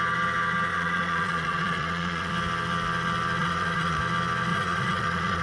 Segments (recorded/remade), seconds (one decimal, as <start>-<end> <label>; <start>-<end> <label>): 0.0-0.7 recorded; 0.7-2.3 remade; 2.3-3.4 recorded; 3.4-4.0 remade; 4.0-4.5 recorded; 4.5-5.4 remade